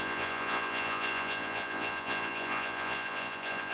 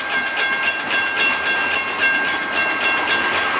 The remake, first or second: first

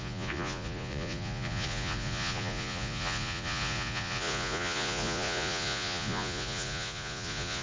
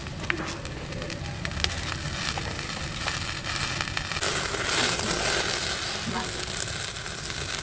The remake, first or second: first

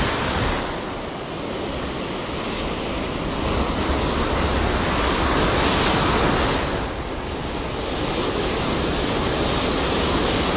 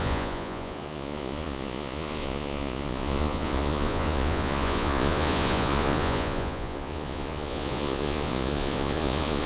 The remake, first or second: second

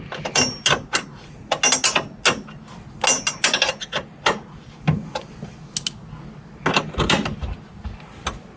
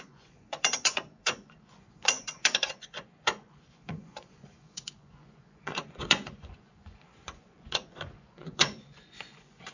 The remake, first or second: second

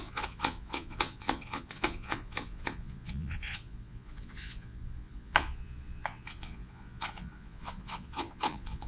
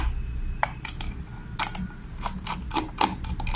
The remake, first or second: first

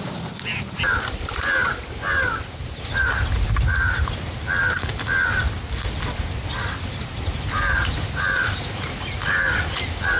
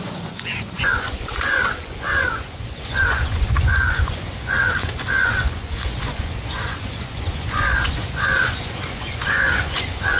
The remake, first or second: second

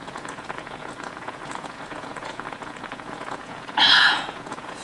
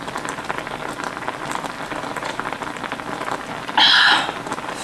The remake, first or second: first